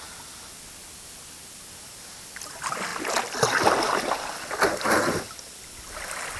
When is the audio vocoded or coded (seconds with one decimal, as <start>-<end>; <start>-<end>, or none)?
none